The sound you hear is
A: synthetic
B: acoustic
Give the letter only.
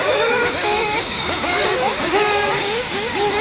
A